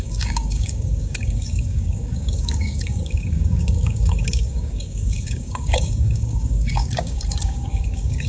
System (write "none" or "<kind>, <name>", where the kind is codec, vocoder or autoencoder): codec, DAC